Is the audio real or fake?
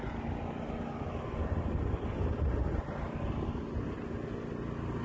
real